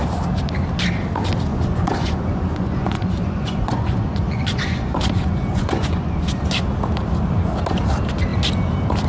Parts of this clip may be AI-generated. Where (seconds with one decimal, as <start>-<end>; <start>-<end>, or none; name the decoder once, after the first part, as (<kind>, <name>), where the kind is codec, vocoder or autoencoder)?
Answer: 1.5-6.5 (vocoder, Vocos)